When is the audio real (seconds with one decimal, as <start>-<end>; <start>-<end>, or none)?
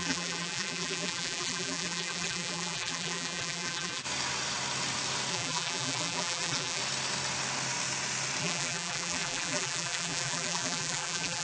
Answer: 4.0-5.3; 6.8-8.4